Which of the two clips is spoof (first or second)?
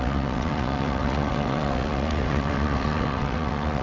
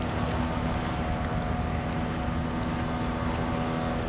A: first